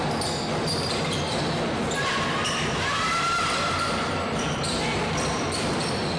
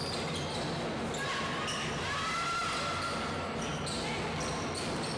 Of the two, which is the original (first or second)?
second